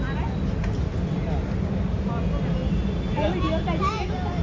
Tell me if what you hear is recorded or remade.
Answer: recorded